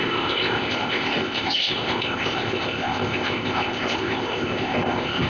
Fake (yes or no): yes